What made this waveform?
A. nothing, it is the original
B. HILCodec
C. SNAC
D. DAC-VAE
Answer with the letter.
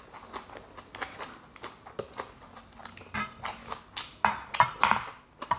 A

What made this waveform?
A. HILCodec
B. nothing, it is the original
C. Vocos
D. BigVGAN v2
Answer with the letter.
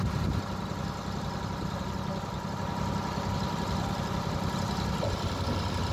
B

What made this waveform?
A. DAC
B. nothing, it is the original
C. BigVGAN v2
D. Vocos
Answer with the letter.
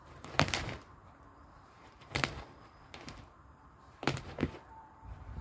C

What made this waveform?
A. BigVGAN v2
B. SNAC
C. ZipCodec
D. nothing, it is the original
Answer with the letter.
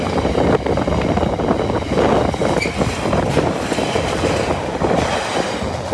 D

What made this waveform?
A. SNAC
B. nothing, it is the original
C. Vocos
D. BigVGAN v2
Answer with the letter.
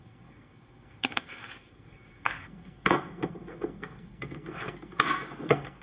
A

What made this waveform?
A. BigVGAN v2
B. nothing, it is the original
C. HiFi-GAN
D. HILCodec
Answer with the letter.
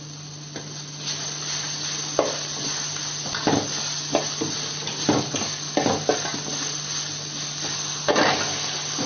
B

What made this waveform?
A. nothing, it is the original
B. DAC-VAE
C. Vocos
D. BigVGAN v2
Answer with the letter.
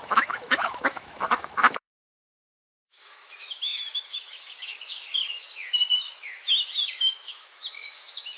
B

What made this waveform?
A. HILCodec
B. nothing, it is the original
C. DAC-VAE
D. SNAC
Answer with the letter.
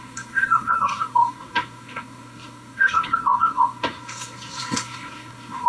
D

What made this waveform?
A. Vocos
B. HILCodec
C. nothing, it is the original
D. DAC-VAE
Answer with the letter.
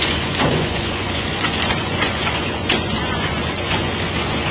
A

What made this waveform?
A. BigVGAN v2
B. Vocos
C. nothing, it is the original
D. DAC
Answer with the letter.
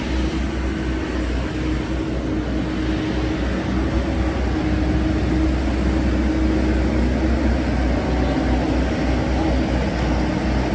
C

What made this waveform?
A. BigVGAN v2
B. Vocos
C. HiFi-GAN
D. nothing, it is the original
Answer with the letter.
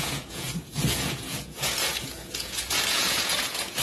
B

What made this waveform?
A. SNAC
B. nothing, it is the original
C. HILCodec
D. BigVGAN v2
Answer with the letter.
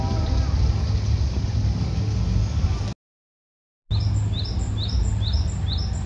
B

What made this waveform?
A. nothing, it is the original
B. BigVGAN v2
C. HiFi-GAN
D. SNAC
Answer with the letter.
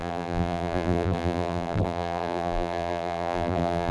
B